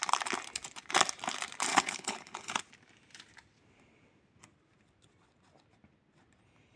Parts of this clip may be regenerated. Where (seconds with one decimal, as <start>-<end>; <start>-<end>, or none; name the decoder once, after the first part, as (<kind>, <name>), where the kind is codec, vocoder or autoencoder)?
1.7-2.6 (codec, HILCodec)

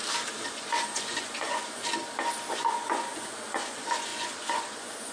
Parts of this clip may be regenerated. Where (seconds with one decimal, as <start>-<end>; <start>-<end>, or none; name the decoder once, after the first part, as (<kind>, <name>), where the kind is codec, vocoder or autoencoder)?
0.5-1.8 (vocoder, Vocos); 2.5-5.1

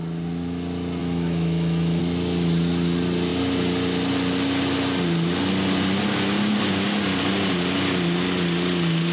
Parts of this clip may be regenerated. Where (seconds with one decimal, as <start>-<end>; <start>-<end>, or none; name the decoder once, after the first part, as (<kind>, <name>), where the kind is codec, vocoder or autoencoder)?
1.0-2.0 (autoencoder, DAC-VAE)

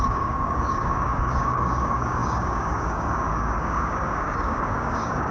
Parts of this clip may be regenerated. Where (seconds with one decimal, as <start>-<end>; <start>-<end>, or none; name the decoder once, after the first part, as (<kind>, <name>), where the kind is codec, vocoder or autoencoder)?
0.0-5.3 (codec, DAC)

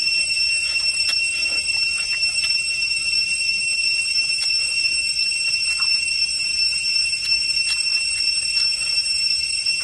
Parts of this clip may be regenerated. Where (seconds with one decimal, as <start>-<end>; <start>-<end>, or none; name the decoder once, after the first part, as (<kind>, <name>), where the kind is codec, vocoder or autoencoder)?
6.5-7.6 (vocoder, BigVGAN v2)